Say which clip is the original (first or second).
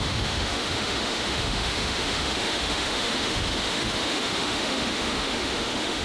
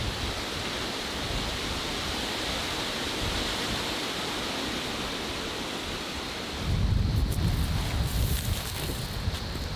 second